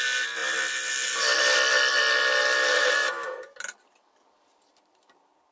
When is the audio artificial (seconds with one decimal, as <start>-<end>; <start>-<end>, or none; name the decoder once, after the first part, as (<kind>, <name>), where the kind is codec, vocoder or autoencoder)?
none